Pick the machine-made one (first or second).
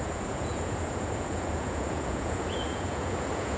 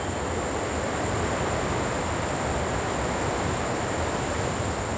first